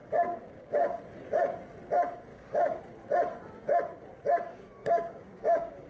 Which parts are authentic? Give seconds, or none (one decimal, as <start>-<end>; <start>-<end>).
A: 1.0-2.3; 2.8-4.8